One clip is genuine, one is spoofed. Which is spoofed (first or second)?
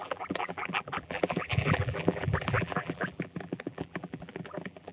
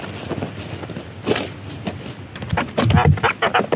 first